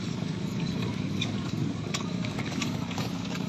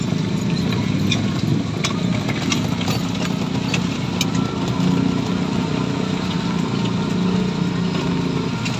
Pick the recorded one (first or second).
second